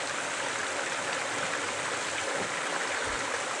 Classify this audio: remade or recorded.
recorded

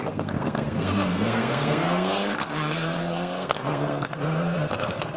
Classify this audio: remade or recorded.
remade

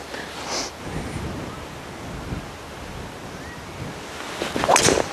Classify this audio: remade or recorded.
recorded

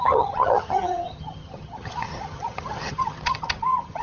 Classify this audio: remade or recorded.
remade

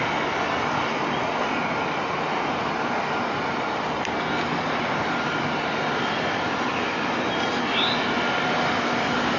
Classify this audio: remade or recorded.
recorded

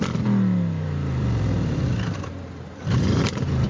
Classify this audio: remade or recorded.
remade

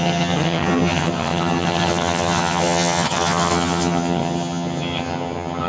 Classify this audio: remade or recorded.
remade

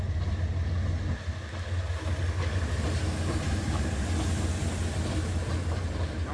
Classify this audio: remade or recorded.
recorded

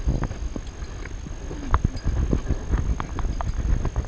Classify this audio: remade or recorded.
recorded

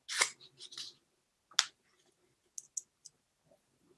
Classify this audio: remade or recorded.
recorded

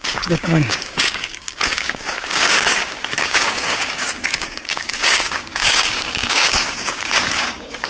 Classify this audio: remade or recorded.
remade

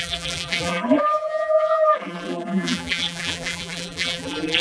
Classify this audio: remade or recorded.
remade